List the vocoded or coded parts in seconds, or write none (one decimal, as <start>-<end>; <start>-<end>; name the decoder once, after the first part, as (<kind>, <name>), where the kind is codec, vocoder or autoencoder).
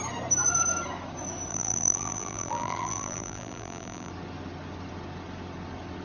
1.5-4.1 (vocoder, BigVGAN v2)